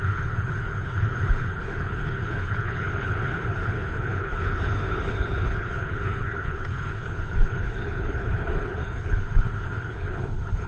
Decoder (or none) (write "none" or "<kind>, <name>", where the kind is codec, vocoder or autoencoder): codec, HILCodec